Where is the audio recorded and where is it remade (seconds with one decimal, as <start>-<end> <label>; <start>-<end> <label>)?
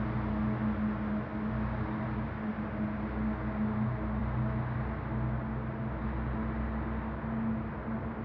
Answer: 0.0-8.2 recorded